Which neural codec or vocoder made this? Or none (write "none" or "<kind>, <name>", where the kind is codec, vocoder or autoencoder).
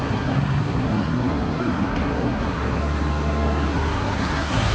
codec, SNAC